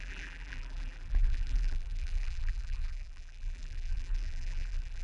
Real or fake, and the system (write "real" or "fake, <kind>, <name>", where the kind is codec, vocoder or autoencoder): fake, vocoder, BigVGAN v2